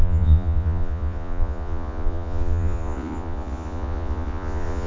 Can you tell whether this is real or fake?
fake